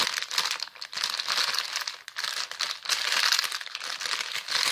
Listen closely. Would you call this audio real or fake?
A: real